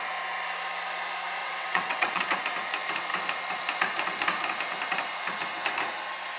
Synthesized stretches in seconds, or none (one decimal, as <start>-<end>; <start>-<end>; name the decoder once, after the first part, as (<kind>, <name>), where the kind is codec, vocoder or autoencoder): 1.4-2.4 (vocoder, WaveNeXt)